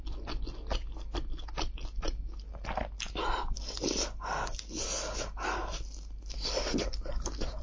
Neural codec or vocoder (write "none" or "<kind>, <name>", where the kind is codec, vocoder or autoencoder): none